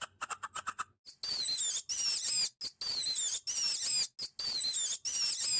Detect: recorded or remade recorded